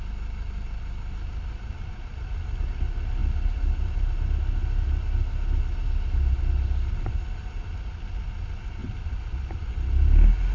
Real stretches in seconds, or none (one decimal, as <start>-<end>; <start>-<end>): 0.0-10.5